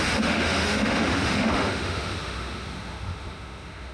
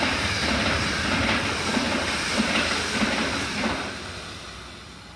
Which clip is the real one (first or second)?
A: second